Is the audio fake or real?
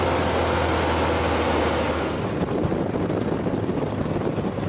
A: real